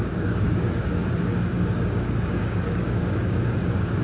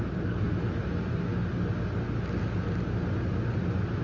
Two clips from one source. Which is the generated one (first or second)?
first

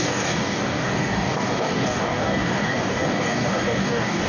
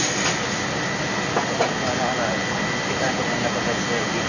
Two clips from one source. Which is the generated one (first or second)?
first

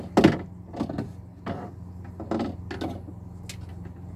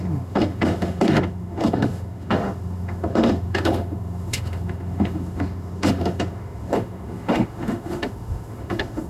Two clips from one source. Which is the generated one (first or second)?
second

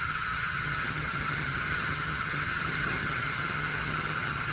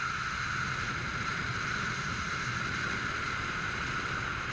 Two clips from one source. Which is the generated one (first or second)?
first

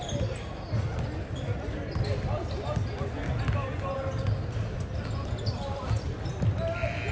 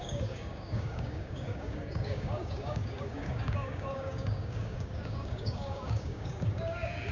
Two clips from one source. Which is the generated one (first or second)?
second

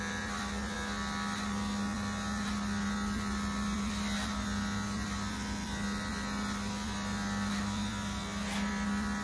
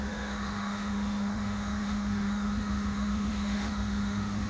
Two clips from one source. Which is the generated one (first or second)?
second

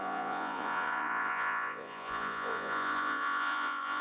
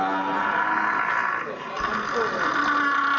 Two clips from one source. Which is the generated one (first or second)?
first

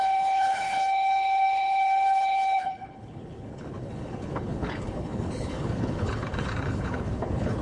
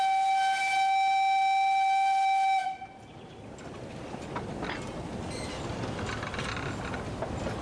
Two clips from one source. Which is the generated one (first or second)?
first